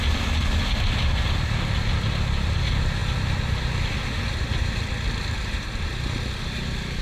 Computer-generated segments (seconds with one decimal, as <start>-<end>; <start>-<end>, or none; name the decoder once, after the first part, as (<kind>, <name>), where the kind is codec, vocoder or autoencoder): none